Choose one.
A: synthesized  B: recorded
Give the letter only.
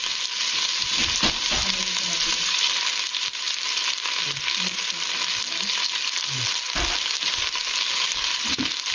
B